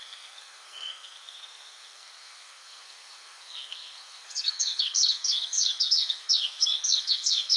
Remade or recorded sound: remade